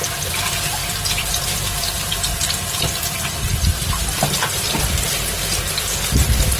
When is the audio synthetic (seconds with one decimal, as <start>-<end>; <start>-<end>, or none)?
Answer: 0.8-4.8